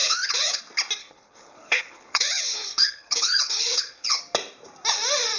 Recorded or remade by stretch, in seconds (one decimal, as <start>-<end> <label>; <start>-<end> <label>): 0.0-0.6 remade; 0.6-1.0 recorded; 1.0-4.2 remade; 4.2-5.4 recorded